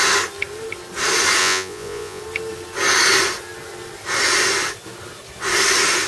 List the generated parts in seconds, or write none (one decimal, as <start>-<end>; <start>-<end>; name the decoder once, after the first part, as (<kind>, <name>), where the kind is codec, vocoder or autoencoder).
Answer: 1.4-2.2 (vocoder, Vocos)